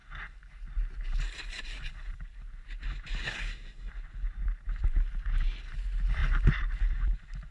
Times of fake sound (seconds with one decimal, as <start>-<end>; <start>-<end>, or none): 3.2-3.9